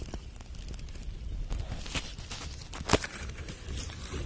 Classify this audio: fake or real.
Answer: real